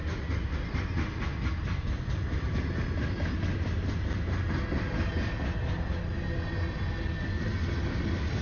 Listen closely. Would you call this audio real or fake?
real